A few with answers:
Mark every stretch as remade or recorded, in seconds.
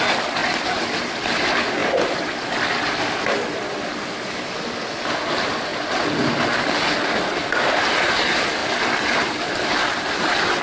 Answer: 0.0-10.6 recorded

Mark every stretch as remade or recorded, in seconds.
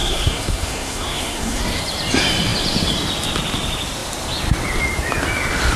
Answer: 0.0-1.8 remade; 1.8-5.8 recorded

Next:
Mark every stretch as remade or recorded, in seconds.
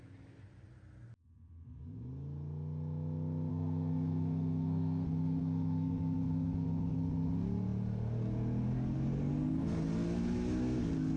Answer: 0.0-3.5 recorded; 3.5-7.1 remade; 7.1-11.2 recorded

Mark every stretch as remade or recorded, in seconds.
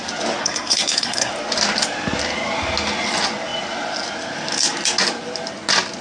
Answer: 0.0-0.4 recorded; 0.4-1.3 remade; 1.3-6.0 recorded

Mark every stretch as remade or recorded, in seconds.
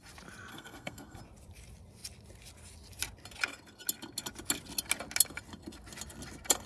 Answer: 0.0-0.5 recorded; 0.5-1.2 remade; 1.2-6.7 recorded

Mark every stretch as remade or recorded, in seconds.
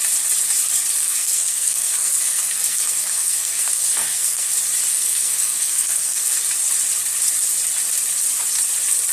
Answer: 0.0-1.0 recorded; 1.0-4.5 remade; 4.5-4.9 recorded; 4.9-6.4 remade; 6.4-9.1 recorded